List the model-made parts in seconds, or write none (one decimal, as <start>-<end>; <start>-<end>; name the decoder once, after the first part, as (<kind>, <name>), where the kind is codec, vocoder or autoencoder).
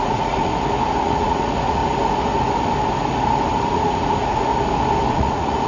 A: 0.0-0.5 (vocoder, Vocos); 1.0-1.8; 3.7-4.5; 5.1-5.7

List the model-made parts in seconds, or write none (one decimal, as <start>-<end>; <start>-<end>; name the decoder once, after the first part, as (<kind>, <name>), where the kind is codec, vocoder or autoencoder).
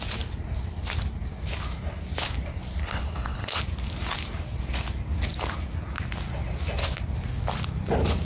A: 2.8-3.6 (codec, HILCodec)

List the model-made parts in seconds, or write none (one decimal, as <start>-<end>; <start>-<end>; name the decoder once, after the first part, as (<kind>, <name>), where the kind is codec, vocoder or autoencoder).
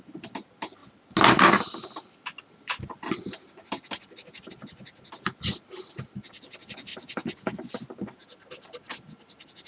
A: none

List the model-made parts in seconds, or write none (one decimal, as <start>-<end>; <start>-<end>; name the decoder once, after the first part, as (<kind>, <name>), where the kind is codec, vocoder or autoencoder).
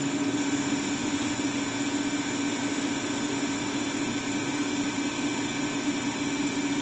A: 1.0-1.6 (vocoder, Vocos)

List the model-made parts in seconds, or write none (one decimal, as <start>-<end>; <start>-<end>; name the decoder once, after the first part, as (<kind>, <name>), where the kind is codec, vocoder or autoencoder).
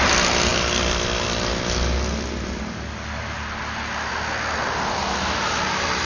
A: none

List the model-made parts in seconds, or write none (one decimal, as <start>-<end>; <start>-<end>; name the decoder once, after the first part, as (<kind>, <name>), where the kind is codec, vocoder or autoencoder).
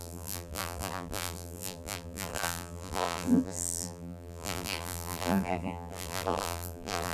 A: 0.0-7.1 (vocoder, BigVGAN v2)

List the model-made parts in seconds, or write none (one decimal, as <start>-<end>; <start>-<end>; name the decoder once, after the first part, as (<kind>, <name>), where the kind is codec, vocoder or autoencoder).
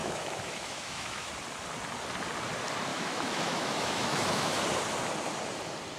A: 0.0-1.3 (autoencoder, DAC-VAE); 2.9-4.6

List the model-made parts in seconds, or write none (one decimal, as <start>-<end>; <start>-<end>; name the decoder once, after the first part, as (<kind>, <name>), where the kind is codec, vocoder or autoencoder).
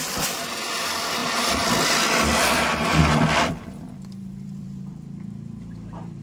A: 1.2-4.9 (vocoder, BigVGAN v2)